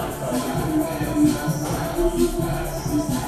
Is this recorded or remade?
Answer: recorded